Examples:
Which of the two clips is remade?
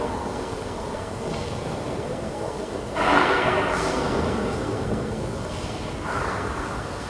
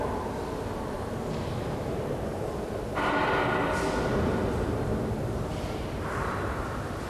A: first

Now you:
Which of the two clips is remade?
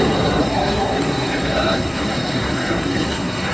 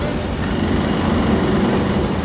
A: first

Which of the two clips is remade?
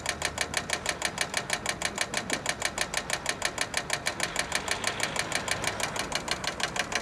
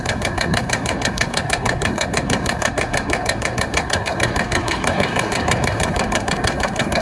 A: second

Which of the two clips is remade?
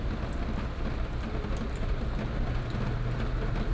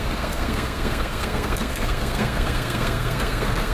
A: second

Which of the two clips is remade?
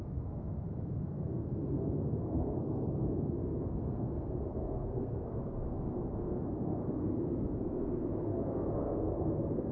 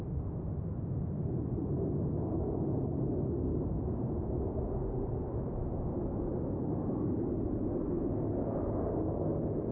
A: first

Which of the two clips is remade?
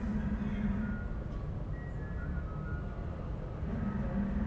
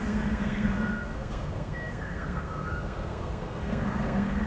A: second